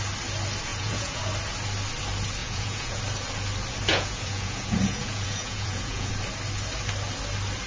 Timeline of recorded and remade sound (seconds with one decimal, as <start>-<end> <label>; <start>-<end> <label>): 0.0-0.7 recorded; 0.7-1.2 remade; 1.2-2.4 recorded; 2.4-3.0 remade; 3.0-3.9 recorded; 3.9-6.1 remade; 6.1-7.7 recorded